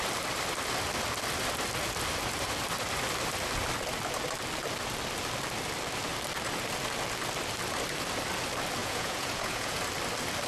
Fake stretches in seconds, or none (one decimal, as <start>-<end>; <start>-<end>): 8.8-9.8